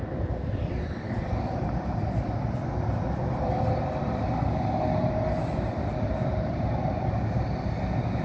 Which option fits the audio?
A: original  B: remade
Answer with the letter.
A